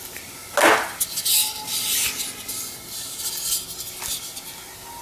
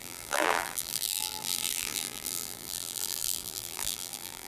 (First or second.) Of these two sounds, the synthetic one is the second